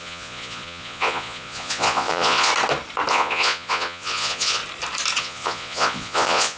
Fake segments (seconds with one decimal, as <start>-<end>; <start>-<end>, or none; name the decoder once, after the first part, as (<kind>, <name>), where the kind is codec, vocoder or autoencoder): 0.0-2.5 (vocoder, Vocos); 3.1-4.6; 5.2-6.6